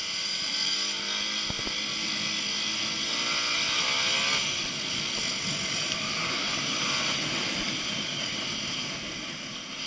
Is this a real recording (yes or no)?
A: yes